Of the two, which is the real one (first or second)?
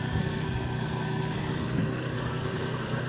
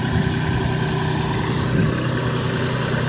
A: second